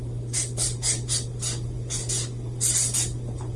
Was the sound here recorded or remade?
recorded